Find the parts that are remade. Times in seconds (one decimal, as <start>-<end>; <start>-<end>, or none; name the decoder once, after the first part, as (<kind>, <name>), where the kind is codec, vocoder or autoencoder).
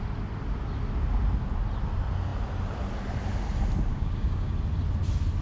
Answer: 3.9-4.5 (codec, DAC)